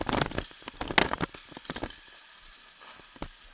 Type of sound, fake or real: real